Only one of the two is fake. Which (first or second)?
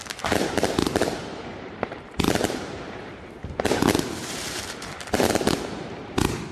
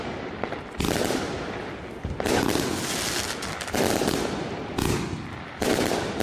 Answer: first